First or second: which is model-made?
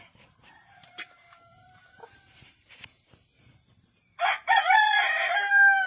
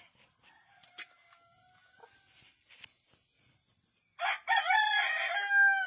first